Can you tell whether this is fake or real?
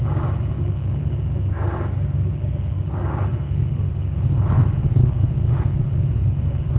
fake